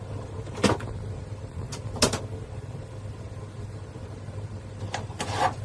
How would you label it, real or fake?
real